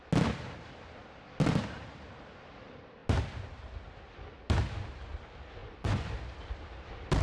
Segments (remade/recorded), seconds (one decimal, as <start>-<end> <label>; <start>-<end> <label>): 0.0-5.6 recorded; 5.6-6.1 remade; 6.1-7.2 recorded